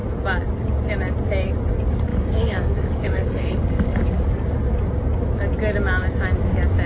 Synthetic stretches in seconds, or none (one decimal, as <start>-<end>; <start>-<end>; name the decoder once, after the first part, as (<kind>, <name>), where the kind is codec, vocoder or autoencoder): 2.1-4.1 (codec, DAC)